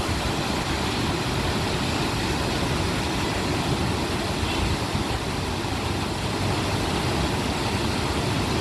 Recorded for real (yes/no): yes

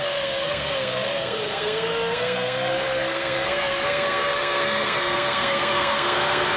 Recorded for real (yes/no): no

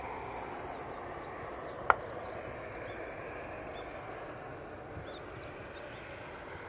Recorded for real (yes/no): yes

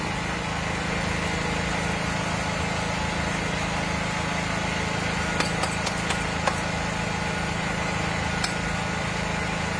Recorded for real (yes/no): yes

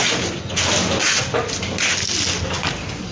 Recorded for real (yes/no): yes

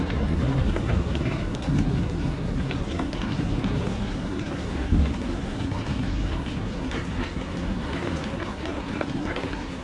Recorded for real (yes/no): no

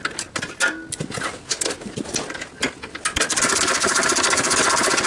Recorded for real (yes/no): yes